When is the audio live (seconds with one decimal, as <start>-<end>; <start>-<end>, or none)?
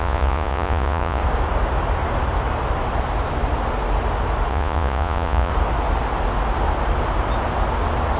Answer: 1.2-4.5; 5.5-8.2